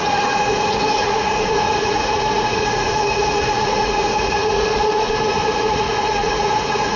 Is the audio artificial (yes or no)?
yes